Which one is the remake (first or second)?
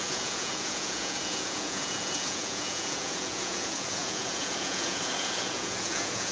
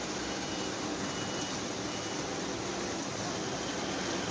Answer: first